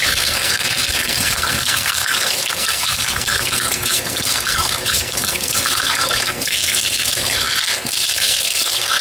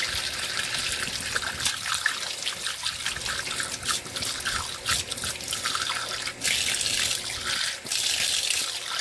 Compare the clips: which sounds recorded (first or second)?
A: second